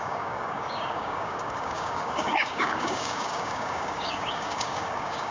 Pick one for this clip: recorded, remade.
remade